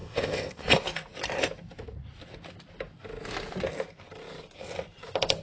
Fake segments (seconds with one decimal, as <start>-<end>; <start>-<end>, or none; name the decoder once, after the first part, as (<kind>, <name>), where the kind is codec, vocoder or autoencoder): 0.0-0.7 (codec, ZipCodec)